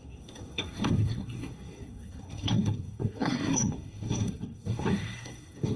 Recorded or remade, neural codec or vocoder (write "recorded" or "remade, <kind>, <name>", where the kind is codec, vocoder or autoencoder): remade, codec, SNAC